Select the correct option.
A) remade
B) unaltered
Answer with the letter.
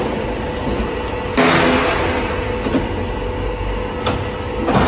B